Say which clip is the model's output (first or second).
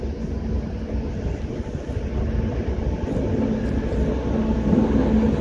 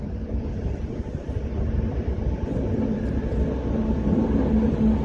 second